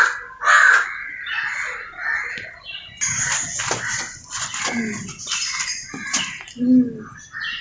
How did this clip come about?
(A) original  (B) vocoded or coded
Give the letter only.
A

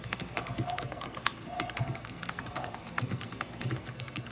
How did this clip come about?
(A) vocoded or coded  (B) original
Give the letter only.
A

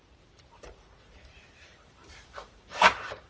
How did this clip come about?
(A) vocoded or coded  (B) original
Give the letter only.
A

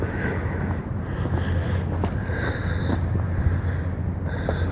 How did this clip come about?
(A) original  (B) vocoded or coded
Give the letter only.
A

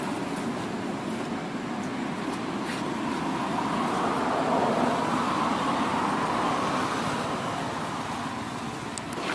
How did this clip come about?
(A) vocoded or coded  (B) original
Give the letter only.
B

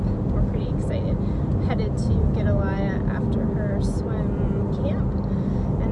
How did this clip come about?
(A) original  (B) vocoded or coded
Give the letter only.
A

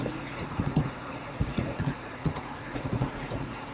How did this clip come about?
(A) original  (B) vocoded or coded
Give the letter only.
B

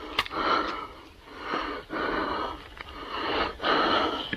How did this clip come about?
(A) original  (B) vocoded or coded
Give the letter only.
A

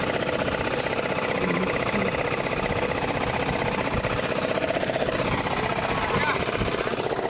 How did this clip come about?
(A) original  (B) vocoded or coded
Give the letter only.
A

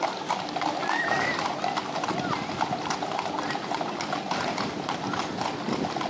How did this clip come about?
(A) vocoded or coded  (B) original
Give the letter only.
B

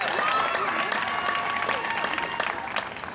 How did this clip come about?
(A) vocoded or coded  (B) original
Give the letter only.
B